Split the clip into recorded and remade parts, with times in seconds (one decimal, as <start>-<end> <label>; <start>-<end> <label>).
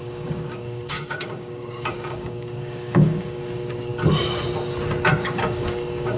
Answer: 0.0-3.9 remade; 3.9-5.2 recorded; 5.2-6.2 remade